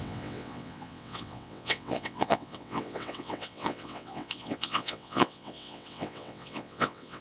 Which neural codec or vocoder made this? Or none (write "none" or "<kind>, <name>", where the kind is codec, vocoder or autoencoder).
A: vocoder, WaveNeXt